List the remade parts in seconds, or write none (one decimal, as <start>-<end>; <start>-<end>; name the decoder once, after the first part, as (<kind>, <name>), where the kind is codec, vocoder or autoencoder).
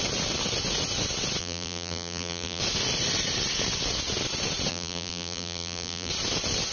1.4-2.6 (vocoder, BigVGAN v2); 4.7-6.1